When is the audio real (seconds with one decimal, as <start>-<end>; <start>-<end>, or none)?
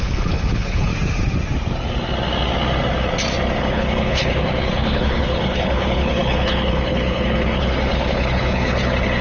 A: 0.9-3.6